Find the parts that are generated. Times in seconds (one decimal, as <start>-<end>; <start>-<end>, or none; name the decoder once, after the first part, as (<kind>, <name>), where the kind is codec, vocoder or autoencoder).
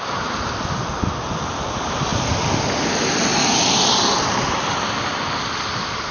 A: none